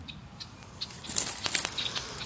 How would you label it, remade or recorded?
recorded